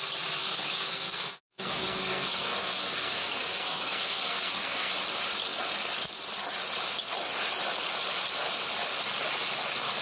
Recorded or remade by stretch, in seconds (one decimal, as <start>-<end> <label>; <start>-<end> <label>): 0.0-0.4 recorded; 0.4-4.9 remade; 4.9-10.0 recorded